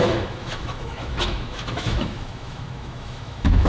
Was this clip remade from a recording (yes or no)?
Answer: yes